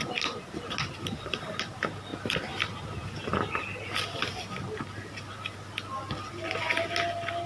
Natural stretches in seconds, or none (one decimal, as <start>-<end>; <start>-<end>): 0.0-7.5